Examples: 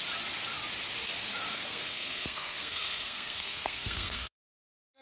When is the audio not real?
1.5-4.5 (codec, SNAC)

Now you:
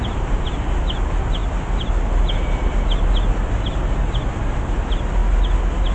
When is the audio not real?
none

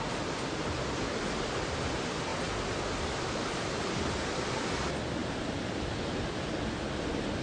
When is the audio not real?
none

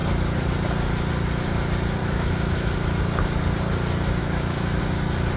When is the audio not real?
2.0-3.0 (autoencoder, DAC-VAE); 4.2-4.8

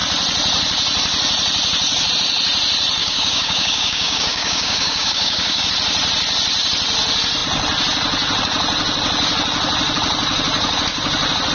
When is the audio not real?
3.0-5.7 (codec, DAC)